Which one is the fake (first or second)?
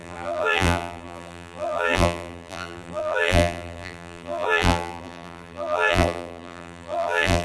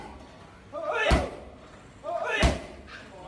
first